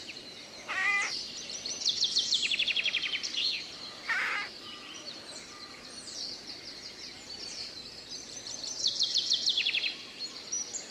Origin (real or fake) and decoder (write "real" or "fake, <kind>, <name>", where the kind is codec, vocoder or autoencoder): fake, vocoder, BigVGAN v2